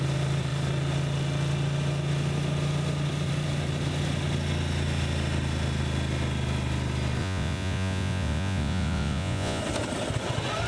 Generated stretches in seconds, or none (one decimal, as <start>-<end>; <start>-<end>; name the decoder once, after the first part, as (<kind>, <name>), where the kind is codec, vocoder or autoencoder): 7.2-9.6 (vocoder, Vocos)